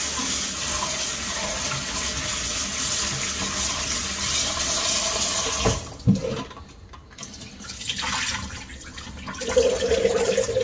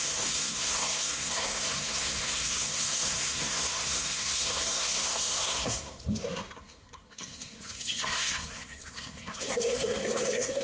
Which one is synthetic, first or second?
second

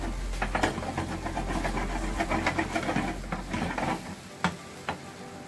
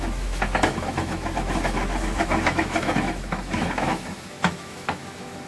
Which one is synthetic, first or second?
second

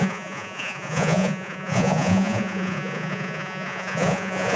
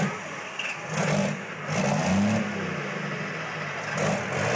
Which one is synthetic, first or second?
first